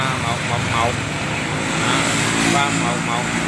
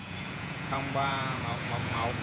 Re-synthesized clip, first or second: second